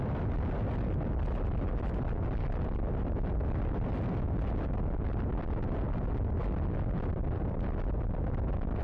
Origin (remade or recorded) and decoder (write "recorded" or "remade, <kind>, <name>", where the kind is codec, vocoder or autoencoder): recorded